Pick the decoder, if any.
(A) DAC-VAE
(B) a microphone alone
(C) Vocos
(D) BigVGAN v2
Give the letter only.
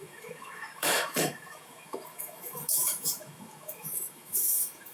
A